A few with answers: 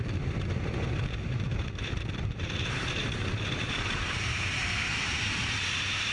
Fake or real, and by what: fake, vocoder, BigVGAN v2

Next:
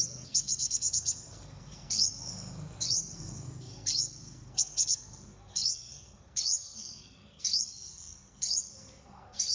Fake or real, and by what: fake, codec, SNAC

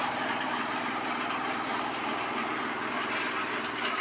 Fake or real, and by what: real